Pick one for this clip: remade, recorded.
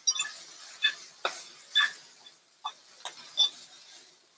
recorded